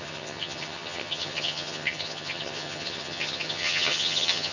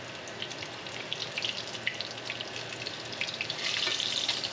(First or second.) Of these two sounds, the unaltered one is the second